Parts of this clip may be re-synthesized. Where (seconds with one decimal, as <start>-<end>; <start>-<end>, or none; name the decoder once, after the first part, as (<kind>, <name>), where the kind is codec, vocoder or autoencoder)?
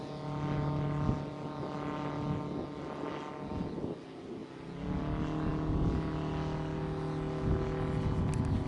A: none